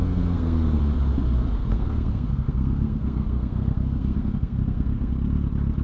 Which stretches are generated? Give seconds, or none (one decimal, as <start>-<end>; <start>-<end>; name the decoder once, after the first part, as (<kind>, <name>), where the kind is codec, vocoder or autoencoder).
0.0-0.8 (codec, SNAC); 1.6-5.1